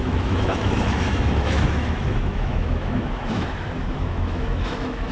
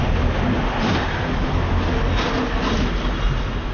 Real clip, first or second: second